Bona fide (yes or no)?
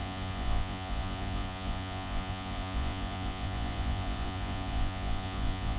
no